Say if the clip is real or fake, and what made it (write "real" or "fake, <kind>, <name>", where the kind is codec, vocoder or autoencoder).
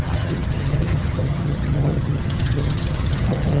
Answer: fake, vocoder, HiFi-GAN